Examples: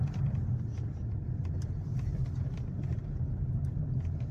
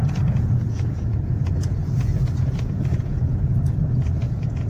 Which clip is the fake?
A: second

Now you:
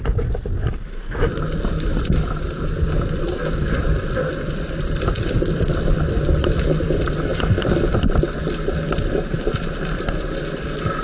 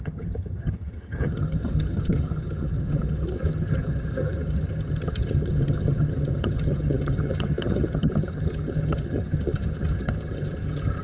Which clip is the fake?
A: second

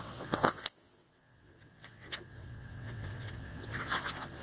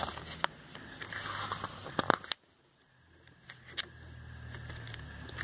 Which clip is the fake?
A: first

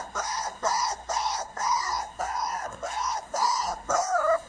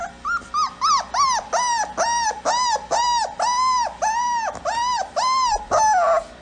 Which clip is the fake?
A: first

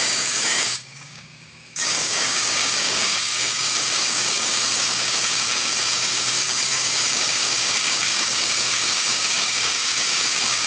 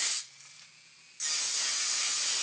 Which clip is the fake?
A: first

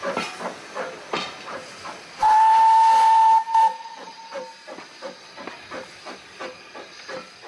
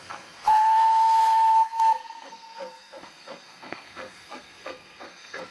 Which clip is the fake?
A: second